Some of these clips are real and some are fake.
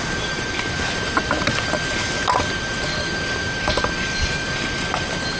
real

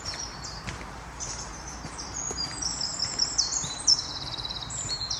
fake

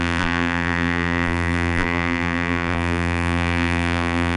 fake